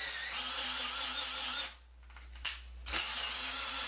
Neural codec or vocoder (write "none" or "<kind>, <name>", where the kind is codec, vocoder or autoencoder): none